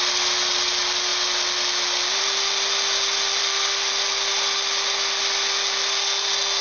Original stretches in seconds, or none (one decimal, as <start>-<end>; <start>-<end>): 0.0-3.4; 3.9-6.6